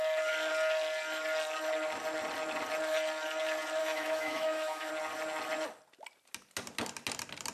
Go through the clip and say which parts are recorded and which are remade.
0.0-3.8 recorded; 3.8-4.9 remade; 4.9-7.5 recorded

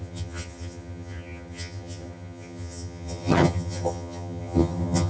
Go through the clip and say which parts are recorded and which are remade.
0.0-5.1 remade

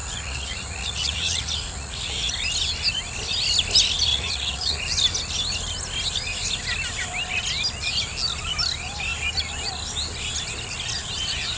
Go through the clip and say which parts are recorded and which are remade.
0.0-2.3 remade; 2.3-4.1 recorded; 4.1-4.8 remade; 4.8-11.6 recorded

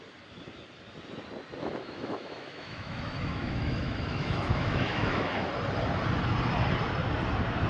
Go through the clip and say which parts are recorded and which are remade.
0.0-1.6 recorded; 1.6-5.5 remade; 5.5-7.7 recorded